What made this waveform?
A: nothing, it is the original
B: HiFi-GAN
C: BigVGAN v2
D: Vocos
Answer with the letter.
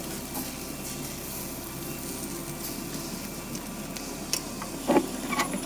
A